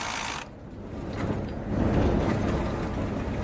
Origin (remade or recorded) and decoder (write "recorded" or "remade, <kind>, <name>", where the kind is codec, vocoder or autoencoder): recorded